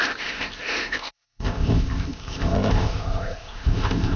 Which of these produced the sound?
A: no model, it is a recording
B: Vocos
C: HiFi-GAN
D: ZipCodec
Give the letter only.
D